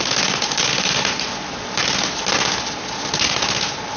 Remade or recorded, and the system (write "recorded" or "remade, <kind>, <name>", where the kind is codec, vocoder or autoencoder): recorded